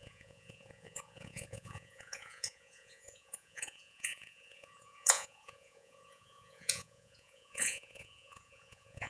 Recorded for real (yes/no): no